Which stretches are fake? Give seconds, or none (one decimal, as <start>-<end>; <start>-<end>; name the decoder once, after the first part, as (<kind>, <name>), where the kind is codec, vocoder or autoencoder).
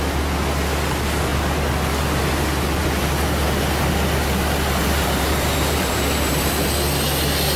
4.8-6.5 (vocoder, BigVGAN v2)